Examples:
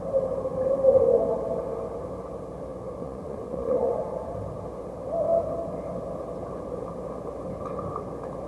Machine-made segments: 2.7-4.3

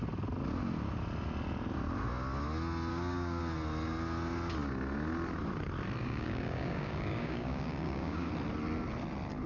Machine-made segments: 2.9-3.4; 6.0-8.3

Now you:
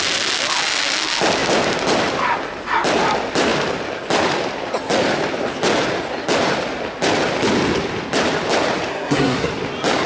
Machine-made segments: 8.9-9.5